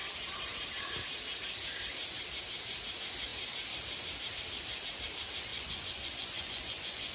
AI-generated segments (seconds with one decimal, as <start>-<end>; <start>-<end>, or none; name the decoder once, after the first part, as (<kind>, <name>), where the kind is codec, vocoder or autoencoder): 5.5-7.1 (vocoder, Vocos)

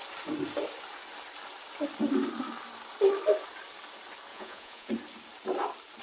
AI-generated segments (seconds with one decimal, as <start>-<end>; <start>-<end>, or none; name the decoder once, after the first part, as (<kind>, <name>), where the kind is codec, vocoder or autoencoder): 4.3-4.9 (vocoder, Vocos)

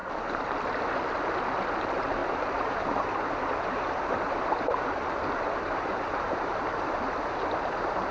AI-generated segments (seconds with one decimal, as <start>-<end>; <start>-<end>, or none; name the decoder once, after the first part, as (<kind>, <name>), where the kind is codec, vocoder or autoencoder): 0.0-1.0 (vocoder, BigVGAN v2); 2.2-7.0

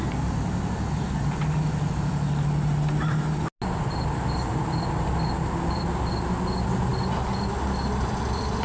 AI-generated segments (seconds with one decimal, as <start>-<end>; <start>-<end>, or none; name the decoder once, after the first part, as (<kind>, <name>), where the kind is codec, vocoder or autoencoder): none